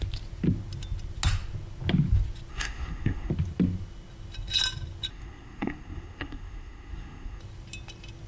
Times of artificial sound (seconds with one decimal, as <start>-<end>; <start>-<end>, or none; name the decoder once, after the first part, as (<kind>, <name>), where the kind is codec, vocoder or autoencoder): 2.5-3.3 (codec, SNAC); 5.1-7.4